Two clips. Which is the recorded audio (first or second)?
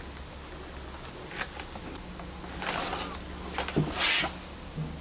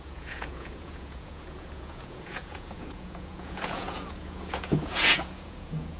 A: first